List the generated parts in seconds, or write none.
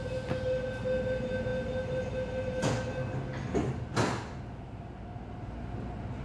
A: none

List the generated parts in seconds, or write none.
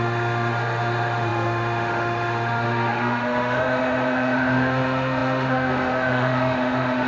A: 0.0-7.1 (autoencoder, DAC-VAE)